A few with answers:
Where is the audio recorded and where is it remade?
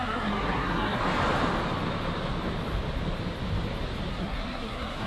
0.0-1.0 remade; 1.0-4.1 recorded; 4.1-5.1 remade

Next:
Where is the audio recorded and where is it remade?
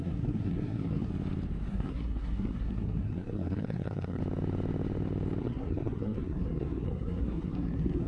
0.0-1.1 remade; 1.1-1.7 recorded; 1.7-4.2 remade; 4.2-5.4 recorded; 5.4-8.1 remade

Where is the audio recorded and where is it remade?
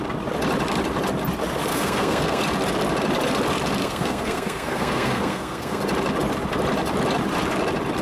0.0-1.7 recorded; 1.7-2.4 remade; 2.4-3.8 recorded; 3.8-5.8 remade; 5.8-8.0 recorded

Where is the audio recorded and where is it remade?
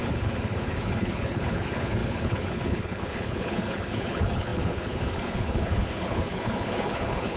0.0-7.4 remade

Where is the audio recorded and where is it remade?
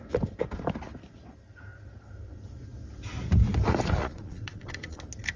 0.0-4.0 recorded; 4.0-5.0 remade; 5.0-5.4 recorded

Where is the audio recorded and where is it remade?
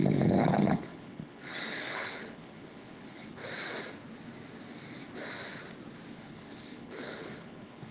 0.0-3.4 remade; 3.4-6.1 recorded; 6.1-7.9 remade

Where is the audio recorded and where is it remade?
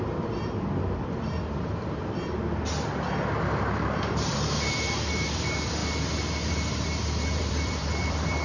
0.0-2.0 remade; 2.0-3.4 recorded; 3.4-5.8 remade; 5.8-6.5 recorded; 6.5-8.4 remade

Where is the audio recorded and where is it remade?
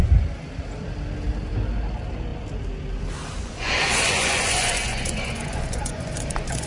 0.0-3.4 recorded; 3.4-6.7 remade